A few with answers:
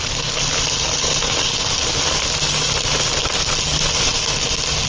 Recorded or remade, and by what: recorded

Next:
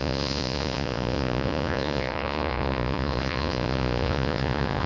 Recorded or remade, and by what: remade, vocoder, Vocos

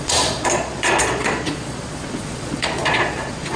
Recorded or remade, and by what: remade, vocoder, Vocos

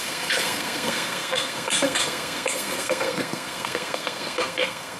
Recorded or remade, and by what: remade, codec, SNAC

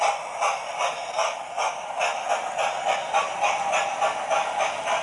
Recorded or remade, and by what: recorded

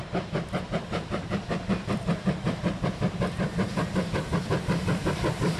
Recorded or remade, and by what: remade, vocoder, BigVGAN v2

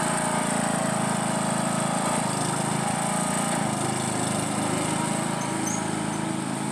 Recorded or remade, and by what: recorded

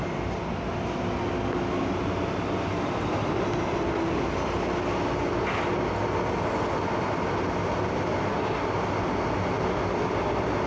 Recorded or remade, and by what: recorded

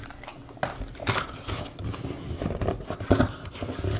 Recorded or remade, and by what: recorded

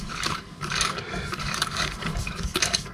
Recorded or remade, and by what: remade, codec, DAC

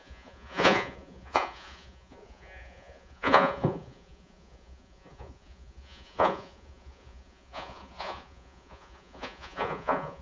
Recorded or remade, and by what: remade, vocoder, Vocos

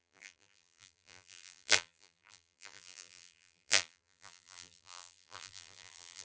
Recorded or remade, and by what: remade, vocoder, BigVGAN v2